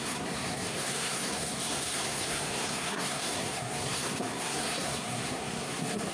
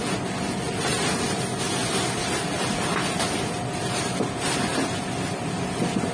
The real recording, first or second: second